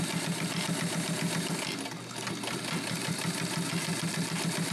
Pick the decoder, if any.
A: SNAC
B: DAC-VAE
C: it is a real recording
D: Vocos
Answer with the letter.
C